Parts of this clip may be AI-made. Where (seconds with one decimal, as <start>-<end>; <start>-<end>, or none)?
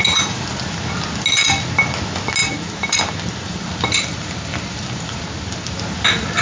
0.0-0.5; 2.4-5.8